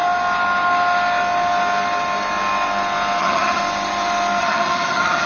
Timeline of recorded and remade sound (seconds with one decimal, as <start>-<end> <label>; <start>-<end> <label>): 0.0-3.2 recorded; 3.2-3.6 remade; 3.6-4.4 recorded; 4.4-5.3 remade